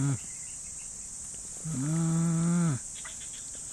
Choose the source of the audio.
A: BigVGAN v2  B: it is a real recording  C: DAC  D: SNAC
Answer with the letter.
B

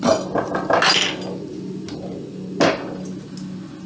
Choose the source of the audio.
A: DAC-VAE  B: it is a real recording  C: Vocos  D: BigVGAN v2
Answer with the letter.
B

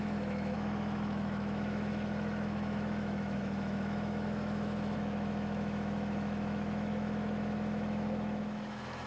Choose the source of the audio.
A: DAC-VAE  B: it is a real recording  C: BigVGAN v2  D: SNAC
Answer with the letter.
A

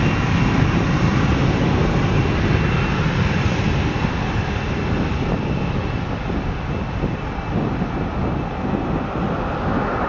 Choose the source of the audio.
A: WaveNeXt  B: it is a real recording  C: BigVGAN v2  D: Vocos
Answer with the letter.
B